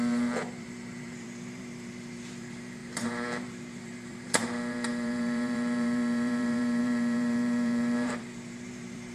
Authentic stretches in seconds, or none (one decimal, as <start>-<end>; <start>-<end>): none